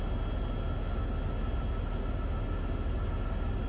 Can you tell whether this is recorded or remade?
recorded